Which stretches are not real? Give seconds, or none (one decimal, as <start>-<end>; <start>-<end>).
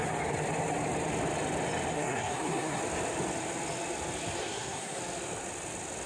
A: 1.9-2.8; 4.4-5.0